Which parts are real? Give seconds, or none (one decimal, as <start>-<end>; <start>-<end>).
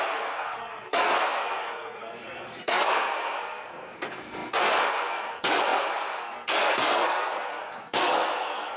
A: none